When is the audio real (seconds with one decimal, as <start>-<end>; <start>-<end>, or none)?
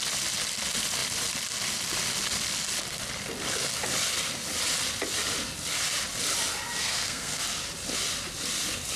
0.0-6.8; 7.4-9.0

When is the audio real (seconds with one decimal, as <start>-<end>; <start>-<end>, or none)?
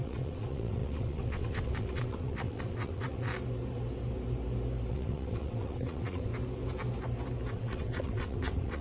3.3-4.9; 6.3-7.5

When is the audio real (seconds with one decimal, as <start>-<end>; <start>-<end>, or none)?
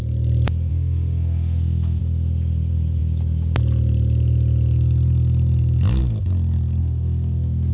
0.0-0.7; 2.0-6.8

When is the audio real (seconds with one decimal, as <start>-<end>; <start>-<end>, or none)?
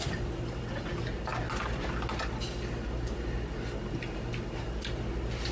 0.0-5.5